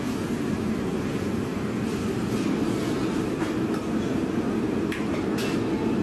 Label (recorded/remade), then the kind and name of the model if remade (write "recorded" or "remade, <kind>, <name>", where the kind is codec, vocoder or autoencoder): recorded